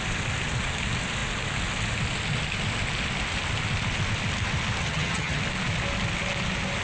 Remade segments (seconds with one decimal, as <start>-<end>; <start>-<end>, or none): 4.8-5.4